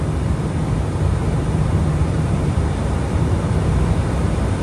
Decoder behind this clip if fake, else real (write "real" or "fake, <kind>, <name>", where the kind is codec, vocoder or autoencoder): fake, vocoder, BigVGAN v2